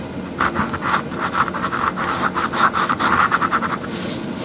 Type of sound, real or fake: real